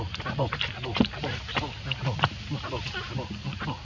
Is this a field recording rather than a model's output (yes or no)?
yes